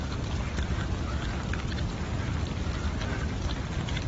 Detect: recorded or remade recorded